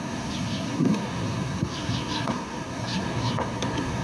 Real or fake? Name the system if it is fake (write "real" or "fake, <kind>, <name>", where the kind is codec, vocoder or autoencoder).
fake, codec, SNAC